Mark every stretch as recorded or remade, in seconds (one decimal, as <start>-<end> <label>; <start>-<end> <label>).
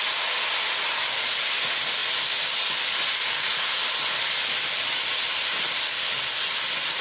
0.0-7.0 recorded